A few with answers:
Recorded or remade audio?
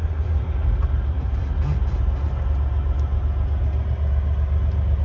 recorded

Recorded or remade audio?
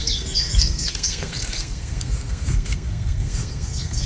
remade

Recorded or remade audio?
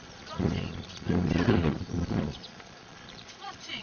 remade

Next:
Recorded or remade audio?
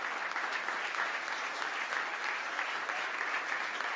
recorded